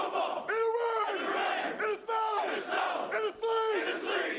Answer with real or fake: real